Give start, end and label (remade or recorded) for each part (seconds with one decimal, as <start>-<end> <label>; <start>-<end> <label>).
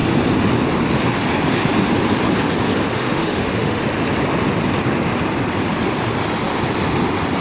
0.0-2.9 recorded; 2.9-3.8 remade; 3.8-7.4 recorded